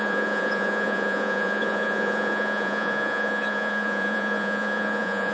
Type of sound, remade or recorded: remade